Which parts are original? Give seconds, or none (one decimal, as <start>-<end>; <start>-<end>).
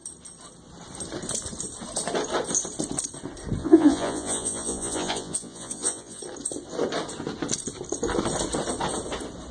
0.0-3.6; 6.2-9.5